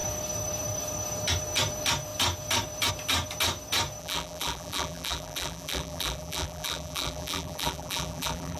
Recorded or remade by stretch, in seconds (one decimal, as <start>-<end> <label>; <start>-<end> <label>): 0.0-4.0 recorded; 4.0-8.6 remade